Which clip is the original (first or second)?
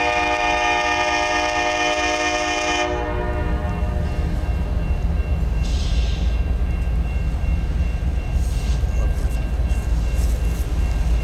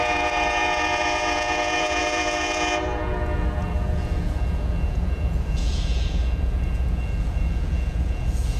first